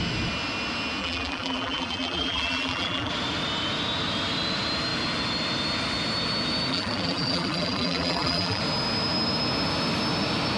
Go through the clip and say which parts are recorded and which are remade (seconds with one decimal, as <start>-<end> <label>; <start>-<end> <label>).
0.0-1.0 recorded; 1.0-3.1 remade; 3.1-6.7 recorded; 6.7-8.6 remade; 8.6-10.6 recorded